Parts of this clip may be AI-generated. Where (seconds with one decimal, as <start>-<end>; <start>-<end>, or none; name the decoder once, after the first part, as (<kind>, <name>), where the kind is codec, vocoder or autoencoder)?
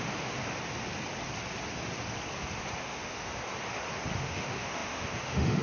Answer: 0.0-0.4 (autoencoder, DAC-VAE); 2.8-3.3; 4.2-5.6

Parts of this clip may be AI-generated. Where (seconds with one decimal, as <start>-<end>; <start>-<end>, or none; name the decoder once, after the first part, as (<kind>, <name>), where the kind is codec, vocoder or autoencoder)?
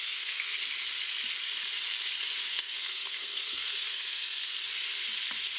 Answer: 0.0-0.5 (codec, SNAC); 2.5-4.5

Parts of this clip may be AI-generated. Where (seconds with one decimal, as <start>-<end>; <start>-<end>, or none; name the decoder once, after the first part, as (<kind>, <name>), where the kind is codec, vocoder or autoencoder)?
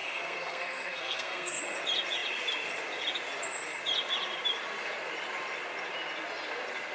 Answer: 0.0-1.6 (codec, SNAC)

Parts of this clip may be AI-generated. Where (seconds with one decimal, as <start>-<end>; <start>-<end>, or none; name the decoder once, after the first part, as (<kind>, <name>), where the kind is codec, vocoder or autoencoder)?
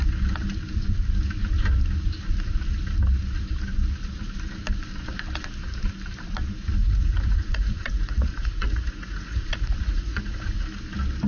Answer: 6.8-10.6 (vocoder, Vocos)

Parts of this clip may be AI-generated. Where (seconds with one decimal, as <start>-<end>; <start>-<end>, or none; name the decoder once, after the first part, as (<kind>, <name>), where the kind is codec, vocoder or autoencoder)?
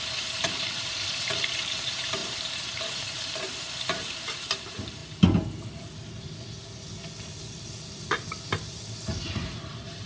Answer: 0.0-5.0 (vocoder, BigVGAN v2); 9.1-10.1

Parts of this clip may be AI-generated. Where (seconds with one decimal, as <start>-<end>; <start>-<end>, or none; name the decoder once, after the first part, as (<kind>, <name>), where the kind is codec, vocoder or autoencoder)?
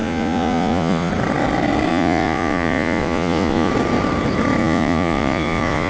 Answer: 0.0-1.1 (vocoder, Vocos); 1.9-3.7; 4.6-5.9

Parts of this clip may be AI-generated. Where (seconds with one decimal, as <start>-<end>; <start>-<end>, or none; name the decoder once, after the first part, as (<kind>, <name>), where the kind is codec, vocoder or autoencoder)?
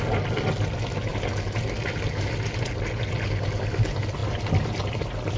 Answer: none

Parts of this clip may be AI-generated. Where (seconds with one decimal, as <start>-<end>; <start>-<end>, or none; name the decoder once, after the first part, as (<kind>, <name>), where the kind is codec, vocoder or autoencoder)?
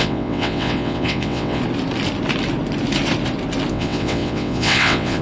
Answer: 0.0-1.6 (vocoder, WaveNeXt); 3.7-5.2